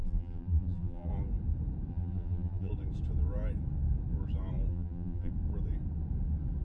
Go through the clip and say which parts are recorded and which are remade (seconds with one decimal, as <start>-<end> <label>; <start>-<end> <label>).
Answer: 0.0-1.1 remade; 1.1-1.9 recorded; 1.9-2.7 remade; 2.7-4.7 recorded; 4.7-5.3 remade; 5.3-6.6 recorded

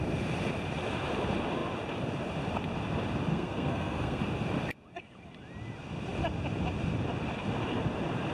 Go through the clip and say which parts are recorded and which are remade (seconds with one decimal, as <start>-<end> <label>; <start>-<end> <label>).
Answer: 0.0-3.3 recorded; 3.3-4.2 remade; 4.2-8.3 recorded

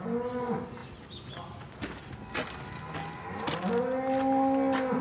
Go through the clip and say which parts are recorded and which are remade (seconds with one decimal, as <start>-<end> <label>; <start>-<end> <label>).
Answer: 0.0-5.0 recorded